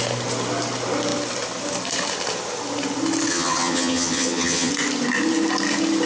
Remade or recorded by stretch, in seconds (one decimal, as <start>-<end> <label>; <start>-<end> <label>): 0.0-3.3 recorded; 3.3-4.7 remade; 4.7-6.1 recorded